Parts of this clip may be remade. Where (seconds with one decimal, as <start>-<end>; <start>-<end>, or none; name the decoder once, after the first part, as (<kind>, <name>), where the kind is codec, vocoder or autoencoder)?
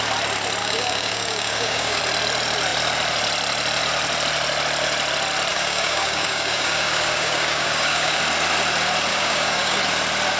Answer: 0.6-2.0 (codec, DAC); 5.5-8.2; 9.1-9.8